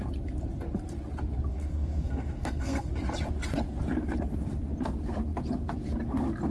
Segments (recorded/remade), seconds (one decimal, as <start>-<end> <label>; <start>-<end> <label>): 0.0-1.5 recorded; 1.5-2.9 remade; 2.9-6.5 recorded